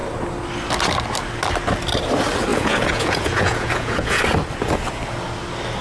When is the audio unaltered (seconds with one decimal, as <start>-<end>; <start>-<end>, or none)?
0.0-2.5; 4.2-5.8